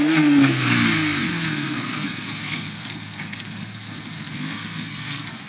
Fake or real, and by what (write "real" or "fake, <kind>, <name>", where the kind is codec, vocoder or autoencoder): fake, codec, SNAC